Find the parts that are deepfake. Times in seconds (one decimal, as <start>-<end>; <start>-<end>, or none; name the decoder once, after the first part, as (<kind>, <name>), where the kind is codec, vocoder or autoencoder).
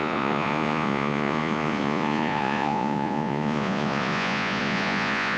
0.0-5.4 (vocoder, Vocos)